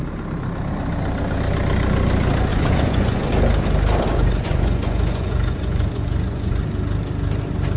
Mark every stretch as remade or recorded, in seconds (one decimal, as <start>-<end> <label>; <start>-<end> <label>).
0.0-2.5 recorded; 2.5-3.3 remade; 3.3-4.1 recorded; 4.1-6.6 remade; 6.6-7.8 recorded